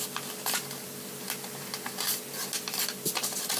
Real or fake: fake